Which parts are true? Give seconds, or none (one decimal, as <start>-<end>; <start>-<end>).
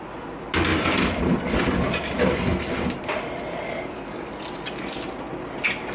0.0-0.7; 1.6-5.9